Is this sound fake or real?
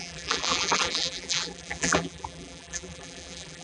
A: fake